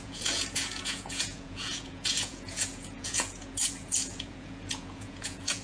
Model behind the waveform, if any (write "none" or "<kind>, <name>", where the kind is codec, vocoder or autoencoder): vocoder, Vocos